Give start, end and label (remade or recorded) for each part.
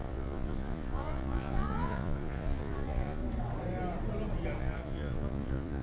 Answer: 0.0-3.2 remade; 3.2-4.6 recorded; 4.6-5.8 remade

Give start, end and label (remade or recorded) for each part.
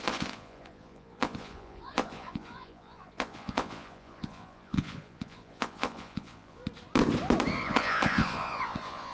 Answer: 0.0-6.6 remade; 6.6-7.6 recorded; 7.6-9.1 remade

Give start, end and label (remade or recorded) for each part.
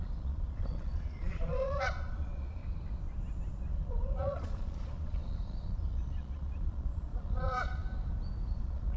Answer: 0.0-2.6 remade; 2.6-3.7 recorded; 3.7-7.8 remade; 7.8-8.5 recorded; 8.5-9.0 remade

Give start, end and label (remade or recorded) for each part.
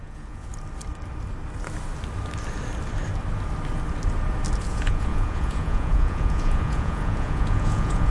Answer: 0.0-0.5 remade; 0.5-4.6 recorded; 4.6-8.1 remade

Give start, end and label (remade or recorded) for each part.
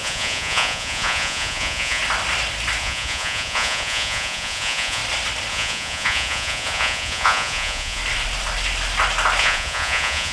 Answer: 0.0-2.0 remade; 2.0-2.8 recorded; 2.8-5.0 remade; 5.0-5.5 recorded; 5.5-8.0 remade; 8.0-9.4 recorded; 9.4-10.3 remade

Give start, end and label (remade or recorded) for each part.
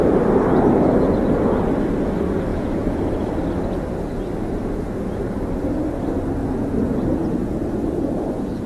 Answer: 0.0-2.5 recorded; 2.5-3.0 remade; 3.0-6.4 recorded; 6.4-8.7 remade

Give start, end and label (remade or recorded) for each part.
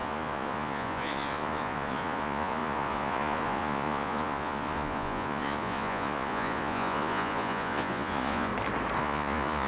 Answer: 0.0-8.5 remade; 8.5-9.0 recorded; 9.0-9.7 remade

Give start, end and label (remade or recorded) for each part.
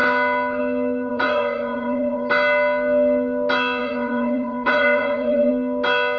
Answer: 0.0-1.1 recorded; 1.1-2.3 remade; 2.3-3.8 recorded; 3.8-5.5 remade; 5.5-6.2 recorded